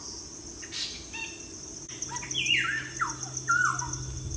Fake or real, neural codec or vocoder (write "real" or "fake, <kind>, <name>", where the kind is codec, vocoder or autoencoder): real